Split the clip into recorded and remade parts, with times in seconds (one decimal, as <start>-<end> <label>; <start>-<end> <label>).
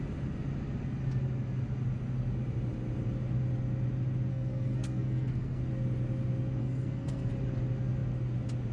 0.0-4.3 recorded; 4.3-5.6 remade; 5.6-6.6 recorded; 6.6-7.3 remade; 7.3-8.7 recorded